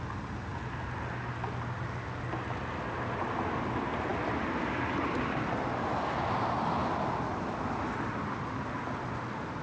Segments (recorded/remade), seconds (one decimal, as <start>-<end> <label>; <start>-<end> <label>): 0.0-9.6 recorded